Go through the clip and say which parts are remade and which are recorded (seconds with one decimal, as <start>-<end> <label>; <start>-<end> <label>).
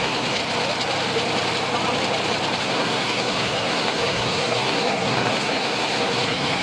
0.0-0.4 remade; 0.4-2.6 recorded; 2.6-6.6 remade